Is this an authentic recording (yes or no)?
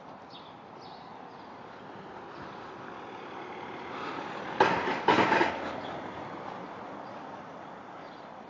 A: yes